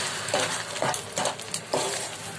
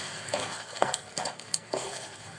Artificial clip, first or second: second